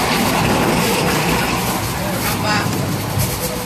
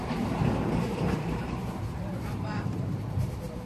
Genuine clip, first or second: first